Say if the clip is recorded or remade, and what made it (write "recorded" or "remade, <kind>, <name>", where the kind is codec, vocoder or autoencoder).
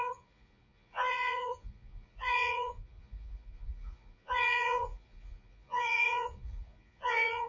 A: remade, vocoder, Vocos